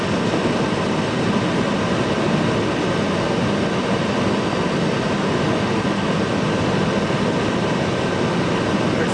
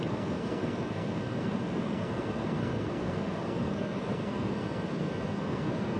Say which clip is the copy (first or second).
second